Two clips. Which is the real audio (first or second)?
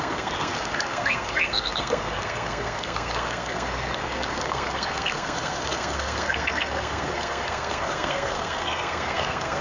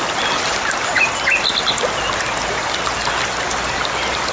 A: second